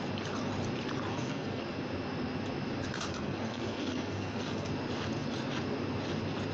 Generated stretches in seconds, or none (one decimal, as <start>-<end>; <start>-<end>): 1.1-1.6; 3.1-4.7